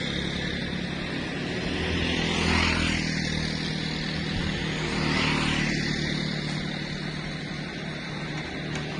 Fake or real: real